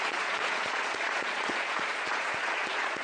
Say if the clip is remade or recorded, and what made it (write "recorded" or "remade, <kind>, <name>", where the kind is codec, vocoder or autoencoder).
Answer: remade, vocoder, Vocos